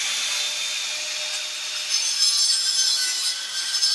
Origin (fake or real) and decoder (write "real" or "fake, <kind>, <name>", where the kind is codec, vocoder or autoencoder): real